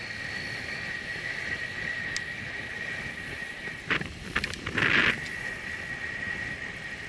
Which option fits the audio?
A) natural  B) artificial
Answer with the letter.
A